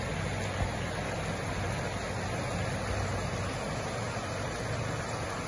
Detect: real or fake real